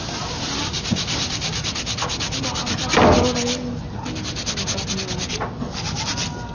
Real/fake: real